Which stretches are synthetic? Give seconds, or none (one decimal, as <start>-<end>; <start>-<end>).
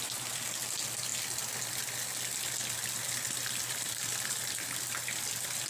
none